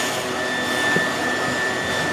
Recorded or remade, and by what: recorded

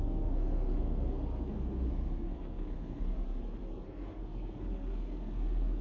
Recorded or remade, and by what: remade, codec, SNAC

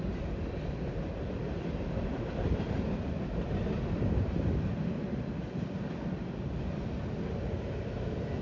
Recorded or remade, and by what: remade, vocoder, BigVGAN v2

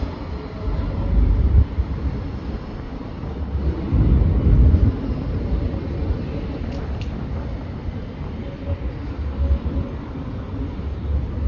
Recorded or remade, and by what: recorded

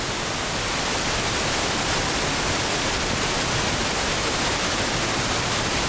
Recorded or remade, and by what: recorded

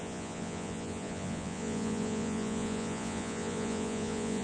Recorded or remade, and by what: remade, vocoder, Vocos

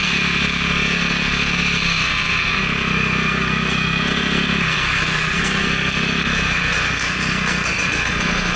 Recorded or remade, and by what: remade, codec, SNAC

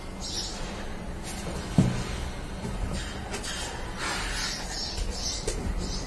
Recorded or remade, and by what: recorded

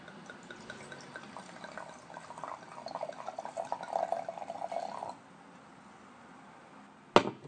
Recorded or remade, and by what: recorded